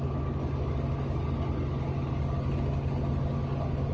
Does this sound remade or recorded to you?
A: recorded